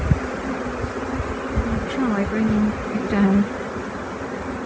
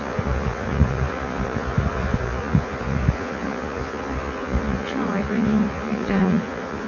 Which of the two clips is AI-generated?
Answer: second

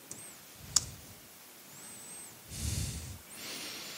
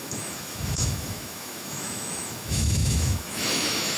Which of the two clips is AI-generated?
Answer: second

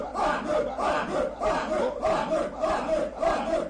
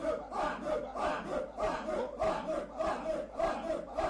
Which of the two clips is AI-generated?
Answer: first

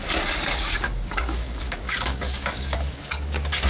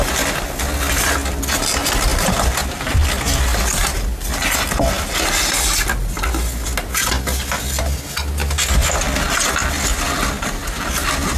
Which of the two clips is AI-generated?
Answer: first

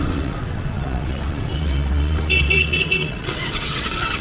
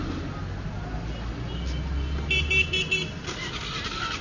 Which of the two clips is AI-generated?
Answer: first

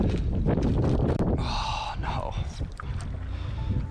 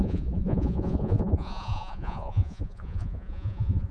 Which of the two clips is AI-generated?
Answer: second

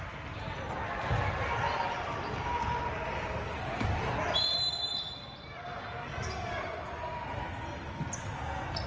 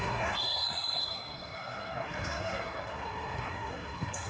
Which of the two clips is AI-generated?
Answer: second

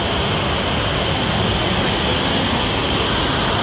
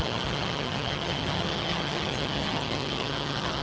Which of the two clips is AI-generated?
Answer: second